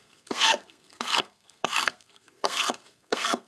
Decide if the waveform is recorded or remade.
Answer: remade